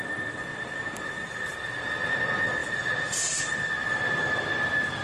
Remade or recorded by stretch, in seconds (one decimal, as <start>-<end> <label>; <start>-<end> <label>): 0.0-0.5 recorded; 0.5-1.1 remade; 1.1-5.0 recorded